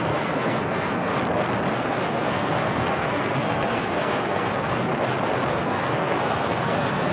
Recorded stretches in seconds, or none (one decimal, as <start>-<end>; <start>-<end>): 1.1-1.7; 4.9-5.5